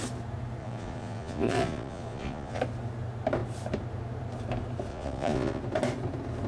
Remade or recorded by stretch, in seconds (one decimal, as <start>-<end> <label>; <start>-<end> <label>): 0.0-0.6 recorded; 0.6-2.6 remade; 2.6-4.9 recorded; 4.9-5.6 remade; 5.6-6.5 recorded